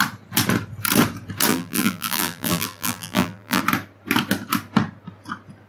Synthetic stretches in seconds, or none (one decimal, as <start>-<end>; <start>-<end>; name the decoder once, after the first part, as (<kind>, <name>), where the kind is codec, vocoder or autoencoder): 1.5-3.6 (vocoder, BigVGAN v2)